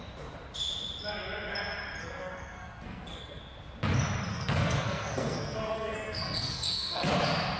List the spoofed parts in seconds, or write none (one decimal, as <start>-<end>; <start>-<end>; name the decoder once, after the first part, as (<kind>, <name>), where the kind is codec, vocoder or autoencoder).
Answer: 2.0-3.4 (codec, SNAC); 4.3-7.1